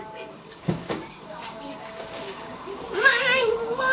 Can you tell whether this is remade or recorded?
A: remade